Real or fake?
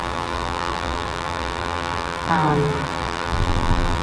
fake